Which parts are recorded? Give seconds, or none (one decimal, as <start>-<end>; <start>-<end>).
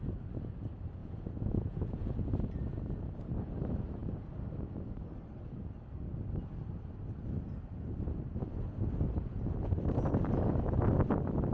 0.0-1.0; 2.1-11.5